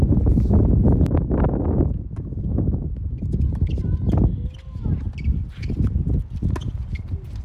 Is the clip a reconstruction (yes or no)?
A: no